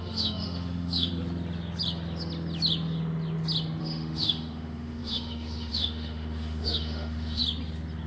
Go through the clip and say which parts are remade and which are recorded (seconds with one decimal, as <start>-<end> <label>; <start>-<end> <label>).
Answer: 0.0-1.1 remade; 1.1-3.8 recorded; 3.8-7.4 remade; 7.4-8.1 recorded